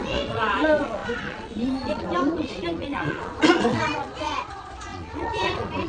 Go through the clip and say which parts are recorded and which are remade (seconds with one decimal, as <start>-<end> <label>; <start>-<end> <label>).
0.0-5.9 remade